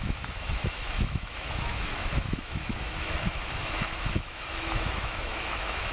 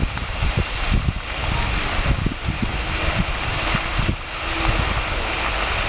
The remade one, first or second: first